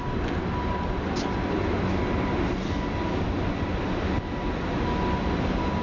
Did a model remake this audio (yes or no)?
no